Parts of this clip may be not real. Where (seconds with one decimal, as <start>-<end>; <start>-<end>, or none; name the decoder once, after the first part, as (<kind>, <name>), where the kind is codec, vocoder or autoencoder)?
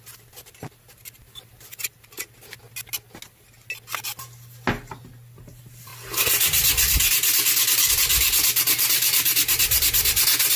none